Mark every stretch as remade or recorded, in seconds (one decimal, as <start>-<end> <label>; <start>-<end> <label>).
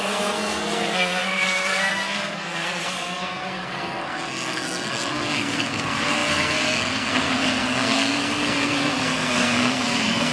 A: 0.0-10.3 remade